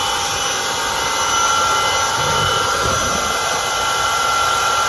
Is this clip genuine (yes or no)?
yes